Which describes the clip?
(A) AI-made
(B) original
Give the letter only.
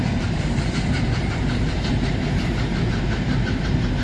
A